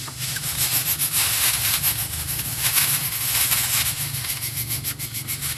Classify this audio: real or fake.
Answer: fake